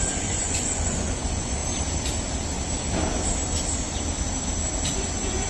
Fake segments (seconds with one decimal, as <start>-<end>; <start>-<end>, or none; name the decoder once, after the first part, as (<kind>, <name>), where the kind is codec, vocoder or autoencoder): 0.0-1.6 (vocoder, Vocos); 4.9-5.5